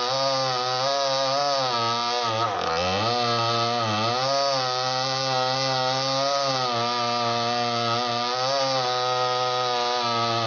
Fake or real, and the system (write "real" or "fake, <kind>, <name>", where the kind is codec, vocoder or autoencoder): real